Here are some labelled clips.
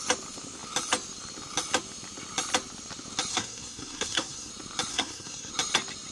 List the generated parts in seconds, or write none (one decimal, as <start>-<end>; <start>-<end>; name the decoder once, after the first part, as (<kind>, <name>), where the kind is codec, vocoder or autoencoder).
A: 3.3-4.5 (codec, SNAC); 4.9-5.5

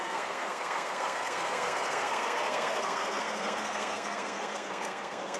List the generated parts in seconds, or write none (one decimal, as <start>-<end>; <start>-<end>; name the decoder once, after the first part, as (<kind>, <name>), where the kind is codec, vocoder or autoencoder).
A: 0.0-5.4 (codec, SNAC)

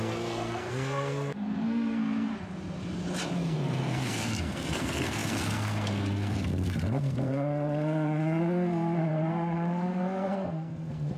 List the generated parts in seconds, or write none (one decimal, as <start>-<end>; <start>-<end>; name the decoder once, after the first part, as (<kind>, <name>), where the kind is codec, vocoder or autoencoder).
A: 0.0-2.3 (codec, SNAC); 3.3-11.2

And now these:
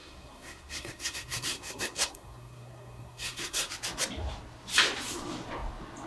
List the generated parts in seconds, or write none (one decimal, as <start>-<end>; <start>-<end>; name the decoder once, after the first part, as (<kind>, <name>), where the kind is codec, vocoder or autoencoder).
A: 0.0-3.7 (codec, SNAC)

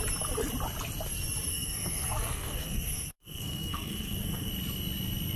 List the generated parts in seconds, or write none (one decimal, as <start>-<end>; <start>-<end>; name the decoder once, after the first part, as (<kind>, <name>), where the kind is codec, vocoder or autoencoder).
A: 1.5-4.5 (codec, SNAC)

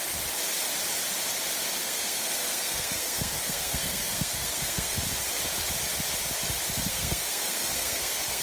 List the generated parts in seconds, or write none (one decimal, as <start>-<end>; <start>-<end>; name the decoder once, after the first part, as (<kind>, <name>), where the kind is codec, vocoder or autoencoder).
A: 1.8-5.0 (codec, SNAC); 6.9-8.4